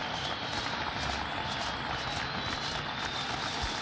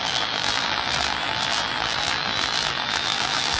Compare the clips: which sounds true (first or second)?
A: first